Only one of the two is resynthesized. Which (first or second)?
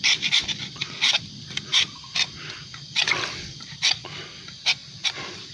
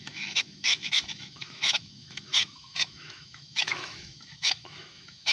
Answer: second